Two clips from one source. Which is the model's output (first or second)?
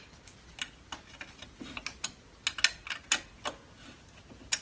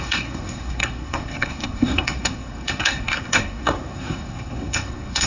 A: second